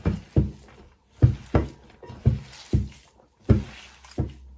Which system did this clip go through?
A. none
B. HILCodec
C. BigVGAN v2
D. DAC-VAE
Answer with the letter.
A